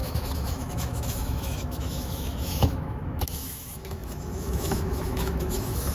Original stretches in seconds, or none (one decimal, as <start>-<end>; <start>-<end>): none